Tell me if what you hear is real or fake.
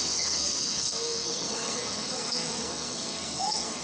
fake